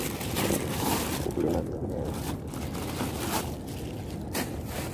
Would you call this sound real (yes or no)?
yes